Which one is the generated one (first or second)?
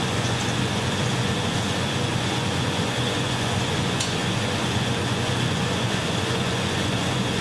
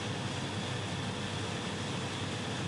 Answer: first